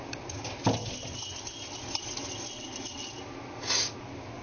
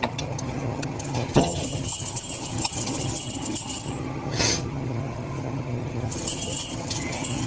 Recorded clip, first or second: first